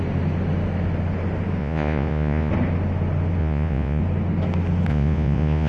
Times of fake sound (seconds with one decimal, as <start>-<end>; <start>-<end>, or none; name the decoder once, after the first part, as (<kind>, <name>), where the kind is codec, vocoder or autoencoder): 1.6-2.5 (vocoder, Vocos); 3.4-4.0; 4.9-5.7